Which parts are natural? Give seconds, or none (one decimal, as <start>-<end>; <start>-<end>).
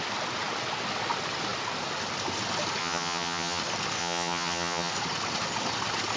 0.0-2.8; 3.6-4.0; 4.9-6.2